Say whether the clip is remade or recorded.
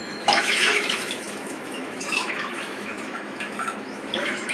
remade